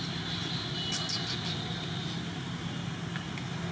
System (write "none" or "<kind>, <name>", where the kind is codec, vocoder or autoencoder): none